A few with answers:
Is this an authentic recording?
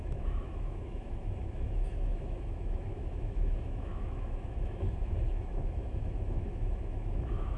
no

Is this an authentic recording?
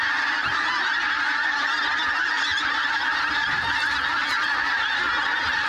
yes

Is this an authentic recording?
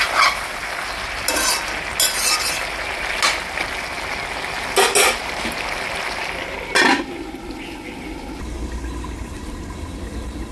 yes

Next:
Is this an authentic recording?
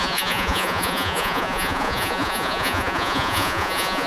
no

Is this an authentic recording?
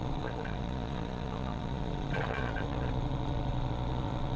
no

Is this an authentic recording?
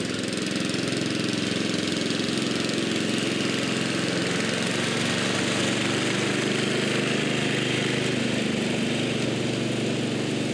yes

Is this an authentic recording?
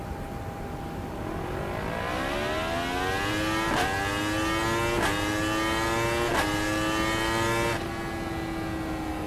yes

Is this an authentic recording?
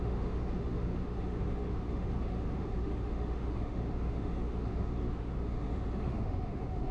no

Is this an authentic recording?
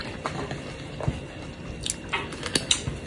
yes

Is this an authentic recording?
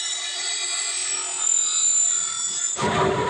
yes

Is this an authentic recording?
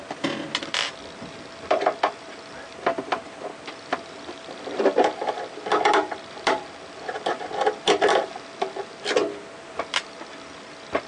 yes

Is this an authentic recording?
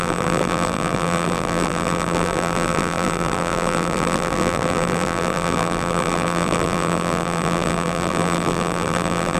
no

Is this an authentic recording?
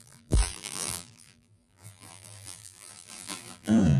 no